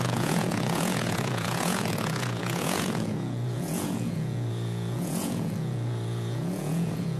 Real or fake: fake